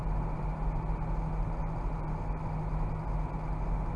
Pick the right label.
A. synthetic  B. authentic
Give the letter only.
B